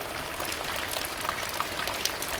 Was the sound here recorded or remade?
recorded